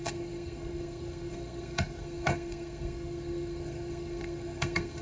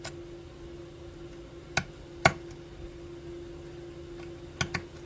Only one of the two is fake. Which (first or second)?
first